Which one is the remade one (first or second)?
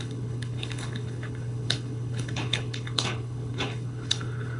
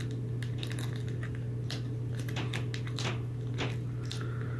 first